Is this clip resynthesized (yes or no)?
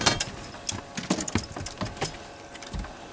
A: no